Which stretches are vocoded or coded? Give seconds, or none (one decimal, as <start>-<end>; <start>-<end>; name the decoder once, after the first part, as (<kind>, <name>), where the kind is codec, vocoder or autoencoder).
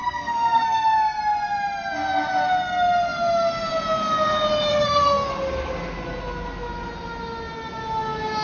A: 0.0-1.2 (codec, SNAC); 4.7-5.3